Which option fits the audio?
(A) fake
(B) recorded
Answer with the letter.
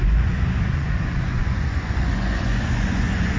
A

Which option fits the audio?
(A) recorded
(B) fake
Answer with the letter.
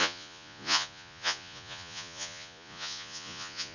B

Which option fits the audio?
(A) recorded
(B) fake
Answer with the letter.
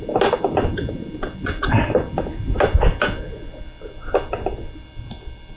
A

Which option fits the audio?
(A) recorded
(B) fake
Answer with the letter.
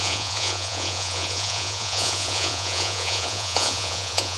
B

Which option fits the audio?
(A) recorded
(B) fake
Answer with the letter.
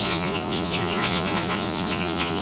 B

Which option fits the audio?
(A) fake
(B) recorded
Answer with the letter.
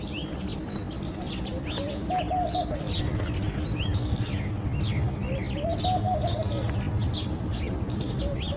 B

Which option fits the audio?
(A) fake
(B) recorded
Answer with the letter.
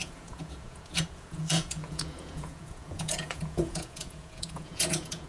A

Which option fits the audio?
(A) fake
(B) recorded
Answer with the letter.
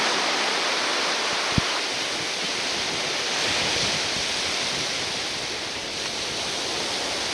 B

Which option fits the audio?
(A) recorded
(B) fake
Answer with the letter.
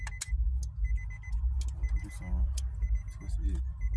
A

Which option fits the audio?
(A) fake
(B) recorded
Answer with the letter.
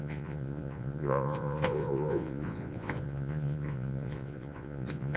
A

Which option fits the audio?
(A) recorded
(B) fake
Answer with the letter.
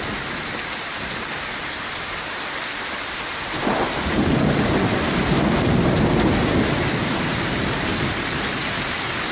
A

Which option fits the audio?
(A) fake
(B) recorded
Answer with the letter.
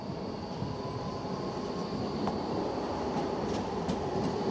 B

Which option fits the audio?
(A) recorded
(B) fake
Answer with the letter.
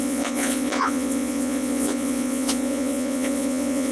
B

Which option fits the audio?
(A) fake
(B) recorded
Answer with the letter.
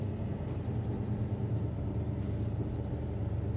B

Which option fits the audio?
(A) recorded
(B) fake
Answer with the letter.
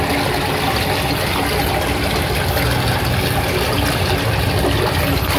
A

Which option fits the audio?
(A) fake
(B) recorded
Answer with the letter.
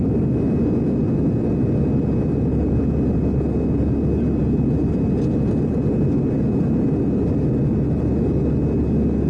B